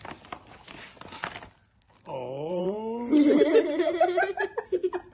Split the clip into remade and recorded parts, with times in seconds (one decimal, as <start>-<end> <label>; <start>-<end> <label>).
0.0-2.5 recorded; 2.5-4.6 remade; 4.6-5.1 recorded